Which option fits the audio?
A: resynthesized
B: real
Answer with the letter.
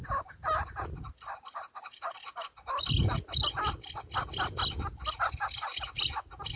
B